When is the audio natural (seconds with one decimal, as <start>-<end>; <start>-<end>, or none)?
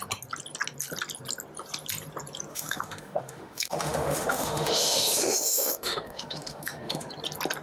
0.0-2.5; 7.1-7.6